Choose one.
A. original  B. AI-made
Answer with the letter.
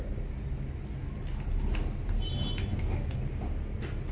A